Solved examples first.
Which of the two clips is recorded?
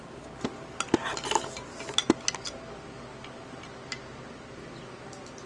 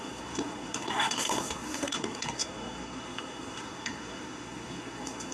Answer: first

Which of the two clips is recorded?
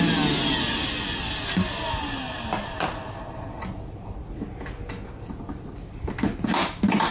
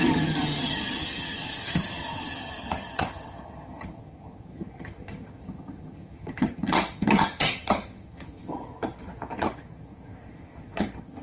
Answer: first